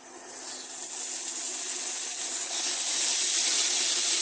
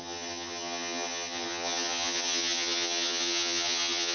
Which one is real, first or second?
first